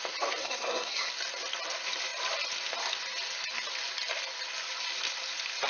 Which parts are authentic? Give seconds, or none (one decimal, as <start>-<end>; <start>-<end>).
0.0-0.4; 1.1-5.7